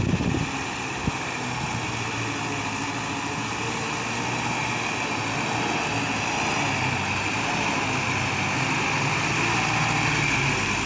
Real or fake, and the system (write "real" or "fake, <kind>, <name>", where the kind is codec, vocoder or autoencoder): real